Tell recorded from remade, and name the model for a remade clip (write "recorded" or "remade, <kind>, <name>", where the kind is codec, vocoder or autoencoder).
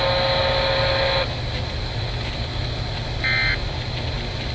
recorded